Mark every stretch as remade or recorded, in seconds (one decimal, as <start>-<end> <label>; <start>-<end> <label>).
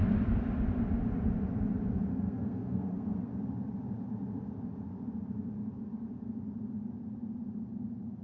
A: 0.0-2.1 recorded; 2.1-3.3 remade; 3.3-8.2 recorded